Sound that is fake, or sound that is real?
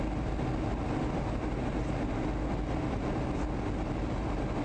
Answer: real